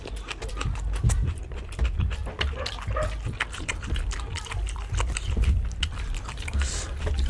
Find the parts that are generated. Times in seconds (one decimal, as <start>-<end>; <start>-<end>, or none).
0.0-2.2; 3.5-7.3